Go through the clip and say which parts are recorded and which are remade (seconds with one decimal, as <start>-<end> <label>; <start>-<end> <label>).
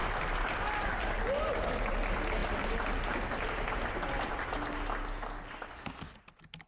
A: 0.0-6.7 recorded